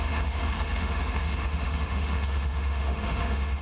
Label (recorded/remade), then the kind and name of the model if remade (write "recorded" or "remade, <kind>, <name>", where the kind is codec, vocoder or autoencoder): remade, autoencoder, DAC-VAE